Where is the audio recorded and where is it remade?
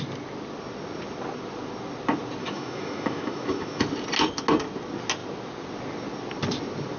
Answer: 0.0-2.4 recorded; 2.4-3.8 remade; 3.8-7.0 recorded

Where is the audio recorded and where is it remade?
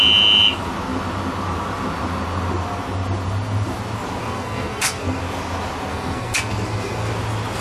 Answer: 0.0-4.2 recorded; 4.2-5.2 remade; 5.2-5.9 recorded; 5.9-7.1 remade; 7.1-7.6 recorded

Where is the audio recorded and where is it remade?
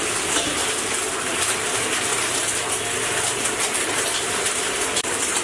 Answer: 0.0-2.1 recorded; 2.1-5.4 remade